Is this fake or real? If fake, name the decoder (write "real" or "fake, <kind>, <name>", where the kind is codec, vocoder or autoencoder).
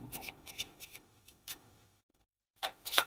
fake, autoencoder, DAC-VAE